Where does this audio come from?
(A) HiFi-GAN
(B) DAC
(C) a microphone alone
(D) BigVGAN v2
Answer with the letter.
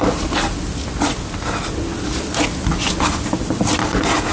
C